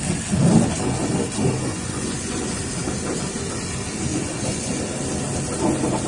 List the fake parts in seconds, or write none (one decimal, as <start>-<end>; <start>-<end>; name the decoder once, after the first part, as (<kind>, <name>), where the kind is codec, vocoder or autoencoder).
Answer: 1.7-2.6 (vocoder, Vocos); 4.1-4.8